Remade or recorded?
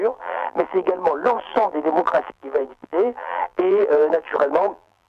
remade